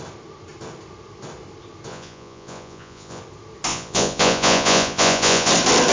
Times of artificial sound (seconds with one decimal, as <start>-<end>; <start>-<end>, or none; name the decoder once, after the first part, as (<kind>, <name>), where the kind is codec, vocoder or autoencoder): 1.9-3.2 (vocoder, Vocos); 3.7-5.5